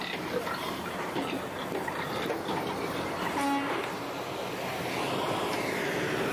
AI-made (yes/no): no